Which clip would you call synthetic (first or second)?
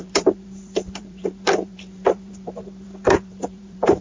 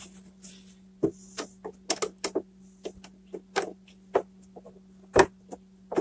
first